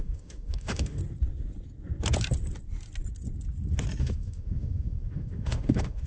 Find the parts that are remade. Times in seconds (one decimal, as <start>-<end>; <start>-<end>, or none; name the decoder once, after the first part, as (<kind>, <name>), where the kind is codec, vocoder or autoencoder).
0.0-1.0 (autoencoder, DAC-VAE); 4.0-6.1